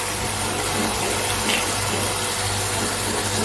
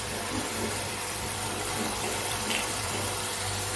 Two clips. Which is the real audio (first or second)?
first